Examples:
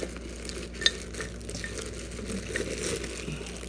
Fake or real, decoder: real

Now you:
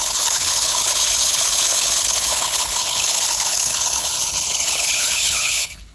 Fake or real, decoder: fake, codec, HILCodec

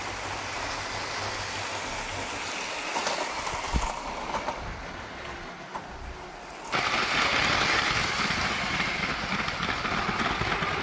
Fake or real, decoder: real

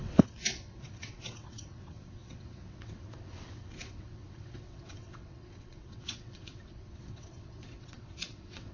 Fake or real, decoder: fake, vocoder, WaveNeXt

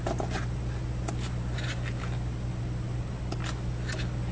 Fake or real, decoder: real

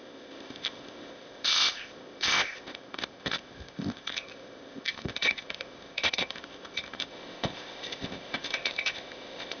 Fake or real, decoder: fake, codec, ZipCodec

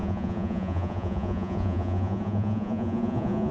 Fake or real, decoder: fake, vocoder, Vocos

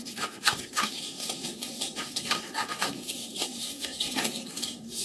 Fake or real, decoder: fake, codec, SNAC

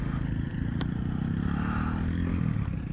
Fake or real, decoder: real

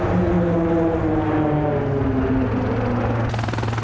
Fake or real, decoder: real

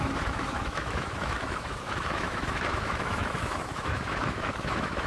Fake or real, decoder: fake, autoencoder, DAC-VAE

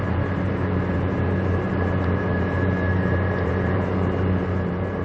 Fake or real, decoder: fake, vocoder, BigVGAN v2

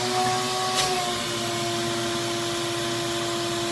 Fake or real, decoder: real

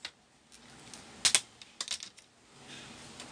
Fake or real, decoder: real